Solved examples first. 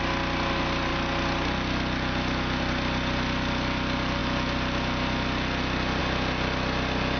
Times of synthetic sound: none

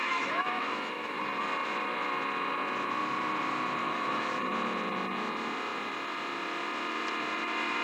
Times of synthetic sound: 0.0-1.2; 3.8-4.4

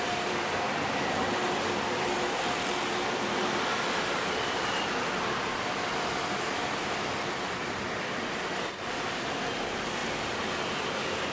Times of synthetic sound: 0.0-10.0; 10.7-11.3

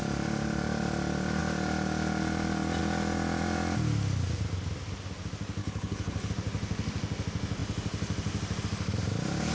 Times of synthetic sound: 5.6-6.3

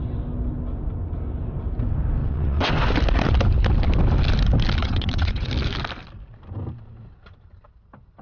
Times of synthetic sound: 2.2-2.7; 4.8-5.5

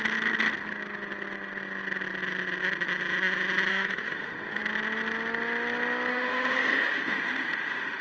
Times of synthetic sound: 3.7-4.6; 6.1-8.0